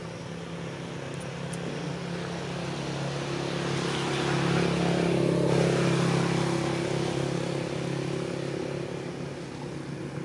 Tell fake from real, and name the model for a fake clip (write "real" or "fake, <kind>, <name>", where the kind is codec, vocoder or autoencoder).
real